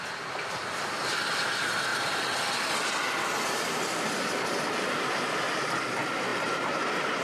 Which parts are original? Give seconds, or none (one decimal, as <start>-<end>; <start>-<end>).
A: 0.0-6.3